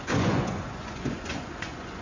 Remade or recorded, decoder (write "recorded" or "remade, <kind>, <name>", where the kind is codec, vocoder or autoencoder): remade, vocoder, Vocos